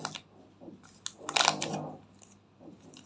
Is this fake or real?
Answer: real